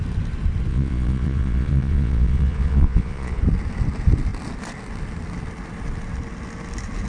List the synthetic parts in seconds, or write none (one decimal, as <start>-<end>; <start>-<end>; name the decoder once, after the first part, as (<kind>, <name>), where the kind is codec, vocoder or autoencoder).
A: 0.7-3.4 (vocoder, Vocos)